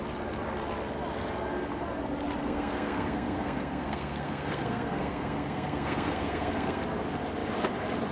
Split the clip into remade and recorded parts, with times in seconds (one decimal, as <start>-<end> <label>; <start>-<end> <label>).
0.0-2.4 recorded; 2.4-6.8 remade; 6.8-8.1 recorded